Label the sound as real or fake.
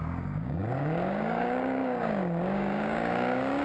fake